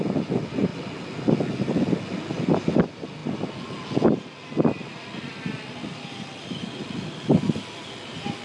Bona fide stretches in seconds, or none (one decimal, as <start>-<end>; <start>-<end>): 0.0-8.4